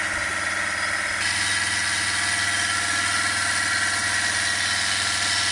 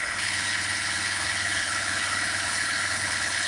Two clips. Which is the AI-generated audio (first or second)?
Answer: second